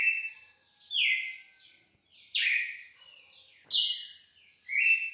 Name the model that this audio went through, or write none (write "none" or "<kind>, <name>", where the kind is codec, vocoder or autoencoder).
none